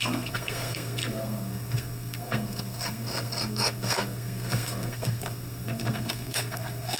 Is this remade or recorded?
remade